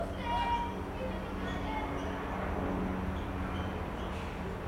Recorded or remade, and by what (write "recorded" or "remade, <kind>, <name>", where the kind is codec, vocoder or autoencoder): recorded